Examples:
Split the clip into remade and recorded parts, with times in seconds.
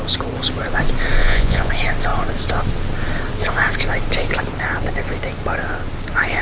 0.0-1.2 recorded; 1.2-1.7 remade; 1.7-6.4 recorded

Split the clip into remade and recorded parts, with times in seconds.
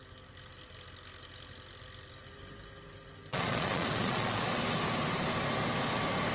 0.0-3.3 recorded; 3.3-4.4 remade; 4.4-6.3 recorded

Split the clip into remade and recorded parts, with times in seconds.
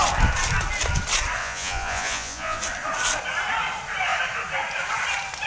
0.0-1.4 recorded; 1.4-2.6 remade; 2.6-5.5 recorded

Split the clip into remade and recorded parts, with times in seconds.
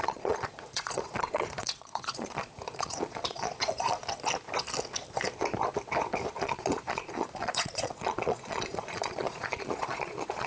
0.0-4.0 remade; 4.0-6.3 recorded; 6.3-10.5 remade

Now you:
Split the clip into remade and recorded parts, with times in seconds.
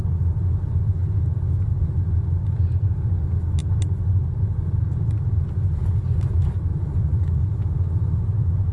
0.0-6.7 recorded; 6.7-7.4 remade; 7.4-8.7 recorded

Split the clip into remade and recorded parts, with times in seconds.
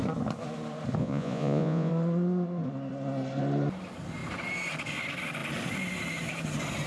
0.0-1.0 recorded; 1.0-1.9 remade; 1.9-6.9 recorded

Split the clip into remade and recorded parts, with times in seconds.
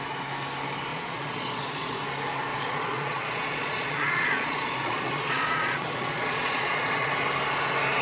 0.0-0.9 recorded; 0.9-2.0 remade; 2.0-2.5 recorded; 2.5-7.1 remade; 7.1-8.0 recorded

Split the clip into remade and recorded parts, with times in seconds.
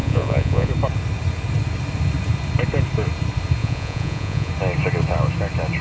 0.0-0.7 remade; 0.7-3.6 recorded; 3.6-4.5 remade; 4.5-5.8 recorded